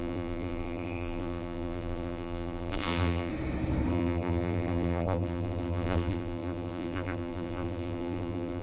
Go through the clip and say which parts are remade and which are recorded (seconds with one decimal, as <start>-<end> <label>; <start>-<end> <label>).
0.0-3.3 remade; 3.3-3.9 recorded; 3.9-8.6 remade